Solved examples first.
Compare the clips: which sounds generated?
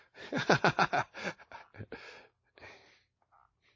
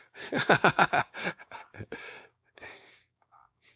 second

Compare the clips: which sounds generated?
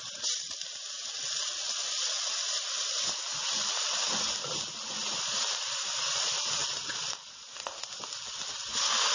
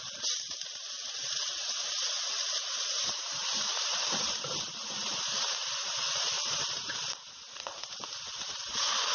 second